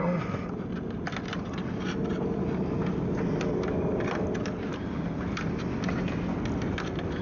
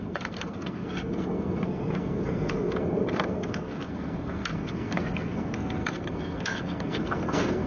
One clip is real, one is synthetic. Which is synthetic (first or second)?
second